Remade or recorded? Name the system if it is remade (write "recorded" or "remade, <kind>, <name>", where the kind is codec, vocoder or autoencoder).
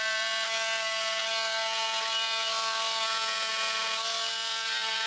recorded